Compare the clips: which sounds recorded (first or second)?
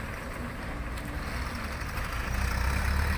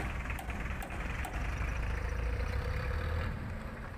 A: first